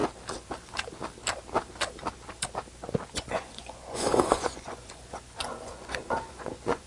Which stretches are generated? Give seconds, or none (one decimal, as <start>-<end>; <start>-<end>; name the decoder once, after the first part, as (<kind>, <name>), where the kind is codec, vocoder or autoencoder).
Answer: 3.1-6.9 (vocoder, Vocos)

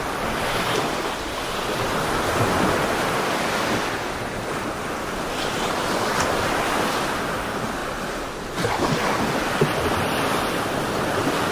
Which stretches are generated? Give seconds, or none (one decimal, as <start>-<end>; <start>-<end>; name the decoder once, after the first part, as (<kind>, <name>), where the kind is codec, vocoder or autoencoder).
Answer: none